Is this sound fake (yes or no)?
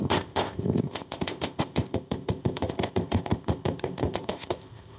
yes